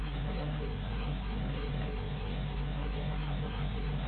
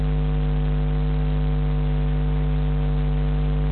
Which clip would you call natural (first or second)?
second